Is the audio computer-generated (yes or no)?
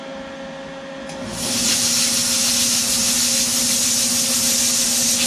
no